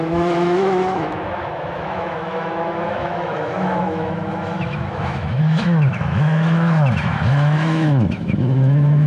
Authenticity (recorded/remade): remade